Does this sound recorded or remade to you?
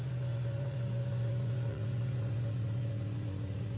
remade